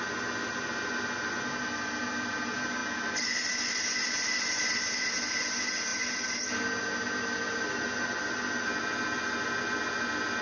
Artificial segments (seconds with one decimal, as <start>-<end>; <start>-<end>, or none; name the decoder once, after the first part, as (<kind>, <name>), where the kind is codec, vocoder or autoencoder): none